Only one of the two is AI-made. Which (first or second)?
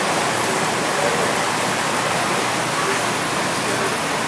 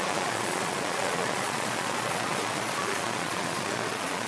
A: second